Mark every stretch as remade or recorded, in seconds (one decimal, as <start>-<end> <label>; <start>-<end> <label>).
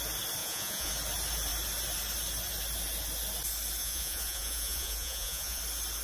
0.0-0.4 recorded; 0.4-0.9 remade; 0.9-3.8 recorded; 3.8-5.6 remade; 5.6-6.0 recorded